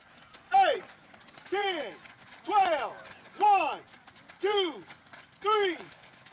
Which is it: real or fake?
fake